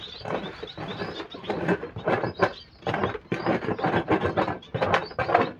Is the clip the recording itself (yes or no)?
yes